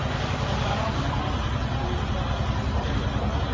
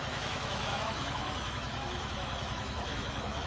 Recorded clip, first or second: first